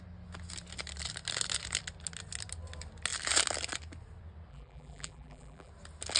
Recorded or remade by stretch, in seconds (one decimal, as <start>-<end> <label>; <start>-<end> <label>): 0.0-4.5 recorded; 4.5-5.7 remade; 5.7-6.2 recorded